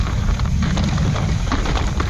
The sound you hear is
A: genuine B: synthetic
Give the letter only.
A